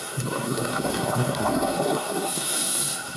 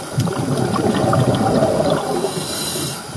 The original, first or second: second